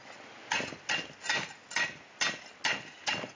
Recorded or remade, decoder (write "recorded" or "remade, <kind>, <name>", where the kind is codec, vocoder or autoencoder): recorded